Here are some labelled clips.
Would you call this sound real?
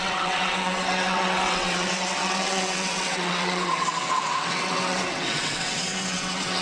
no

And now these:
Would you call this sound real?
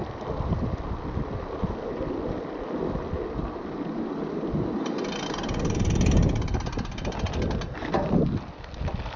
yes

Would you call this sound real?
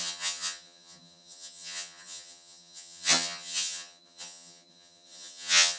no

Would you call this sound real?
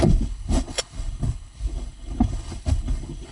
no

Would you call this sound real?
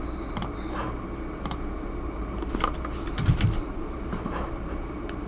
no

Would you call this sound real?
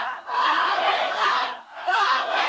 no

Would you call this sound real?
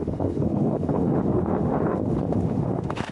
no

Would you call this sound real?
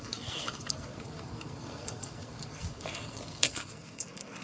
no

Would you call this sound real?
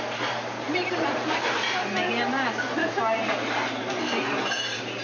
no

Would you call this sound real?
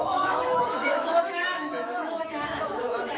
no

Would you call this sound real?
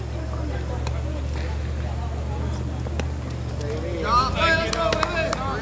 yes